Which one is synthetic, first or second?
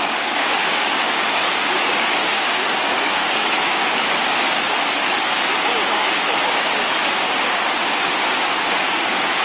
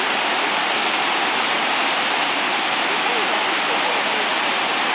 first